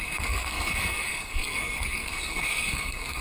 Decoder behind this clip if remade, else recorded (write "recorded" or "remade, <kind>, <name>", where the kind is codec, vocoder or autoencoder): remade, codec, SNAC